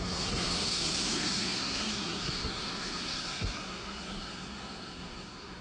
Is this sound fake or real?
fake